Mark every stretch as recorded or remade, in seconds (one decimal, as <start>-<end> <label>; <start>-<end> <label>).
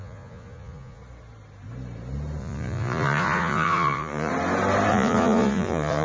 0.0-1.0 remade; 1.0-2.4 recorded; 2.4-4.3 remade; 4.3-4.9 recorded; 4.9-6.0 remade